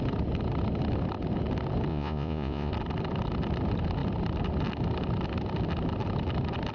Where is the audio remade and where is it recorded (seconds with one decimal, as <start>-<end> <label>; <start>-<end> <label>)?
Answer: 0.0-1.9 recorded; 1.9-2.7 remade; 2.7-6.7 recorded